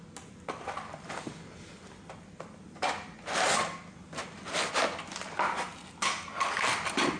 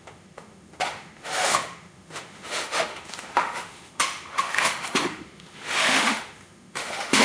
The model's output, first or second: second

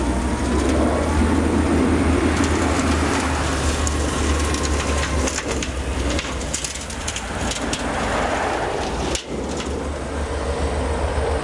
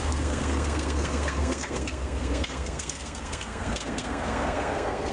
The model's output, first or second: second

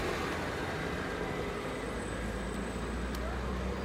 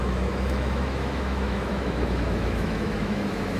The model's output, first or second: second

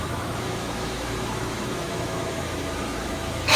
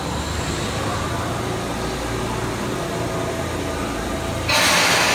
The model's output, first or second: first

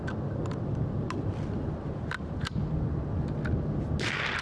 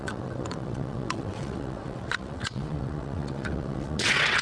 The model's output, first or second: second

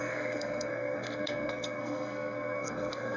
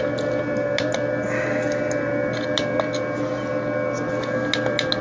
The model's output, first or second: first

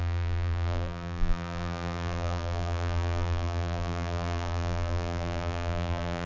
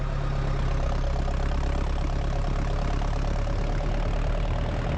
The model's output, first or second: first